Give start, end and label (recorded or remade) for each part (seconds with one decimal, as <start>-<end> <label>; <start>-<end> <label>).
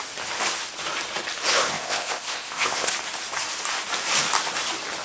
0.0-1.5 recorded; 1.5-2.9 remade; 2.9-5.0 recorded